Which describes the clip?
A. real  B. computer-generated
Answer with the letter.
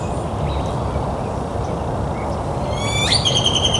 A